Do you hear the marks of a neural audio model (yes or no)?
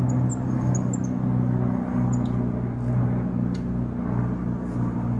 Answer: no